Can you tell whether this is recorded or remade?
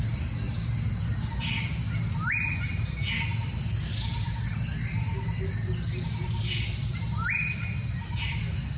recorded